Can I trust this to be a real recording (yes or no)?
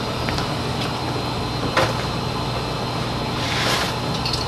yes